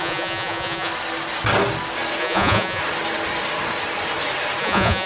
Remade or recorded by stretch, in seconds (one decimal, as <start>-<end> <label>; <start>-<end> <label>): 0.0-0.9 remade; 0.9-2.2 recorded; 2.2-2.8 remade; 2.8-4.6 recorded; 4.6-5.1 remade